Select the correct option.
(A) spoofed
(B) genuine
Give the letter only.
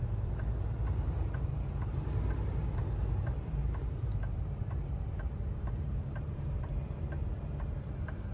A